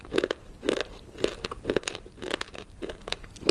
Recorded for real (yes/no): no